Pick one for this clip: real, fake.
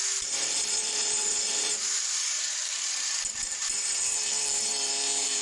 fake